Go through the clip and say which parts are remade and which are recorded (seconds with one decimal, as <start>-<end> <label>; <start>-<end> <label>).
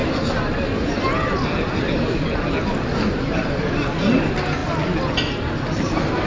0.0-6.3 recorded